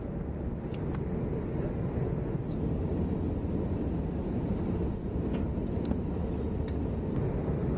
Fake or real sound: real